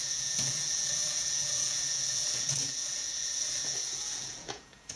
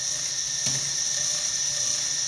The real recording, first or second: second